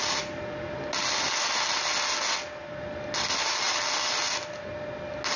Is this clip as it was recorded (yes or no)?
yes